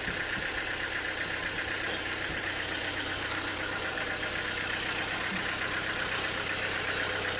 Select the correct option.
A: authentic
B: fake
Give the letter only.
B